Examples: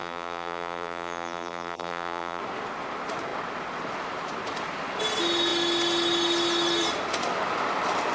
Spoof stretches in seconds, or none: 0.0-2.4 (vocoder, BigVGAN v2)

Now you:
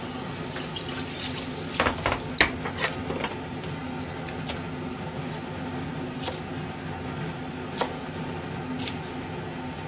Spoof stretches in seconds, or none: none

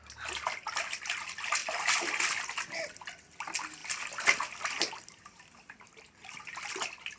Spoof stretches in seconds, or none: none